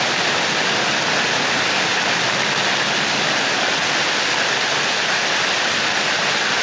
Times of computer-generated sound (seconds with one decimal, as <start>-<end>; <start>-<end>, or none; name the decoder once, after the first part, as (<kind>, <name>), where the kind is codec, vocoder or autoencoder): none